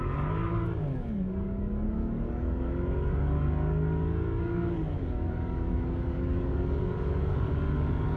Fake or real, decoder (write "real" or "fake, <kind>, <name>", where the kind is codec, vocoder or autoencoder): fake, codec, DAC